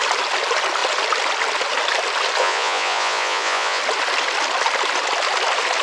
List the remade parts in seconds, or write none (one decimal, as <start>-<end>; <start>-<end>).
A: 2.4-3.8